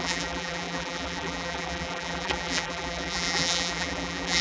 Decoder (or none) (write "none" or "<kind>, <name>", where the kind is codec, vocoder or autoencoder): vocoder, BigVGAN v2